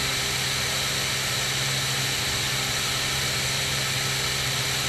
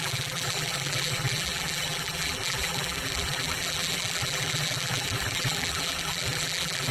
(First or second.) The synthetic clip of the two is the second